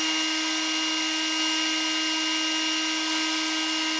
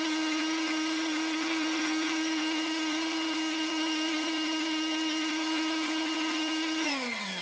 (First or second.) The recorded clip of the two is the first